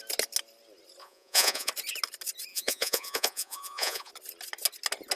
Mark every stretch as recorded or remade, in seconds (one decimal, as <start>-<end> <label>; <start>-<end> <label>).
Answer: 0.0-1.0 recorded; 1.0-1.7 remade; 1.7-2.5 recorded; 2.5-4.1 remade; 4.1-5.2 recorded